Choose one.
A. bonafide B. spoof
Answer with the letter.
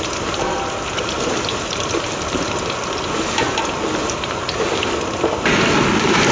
A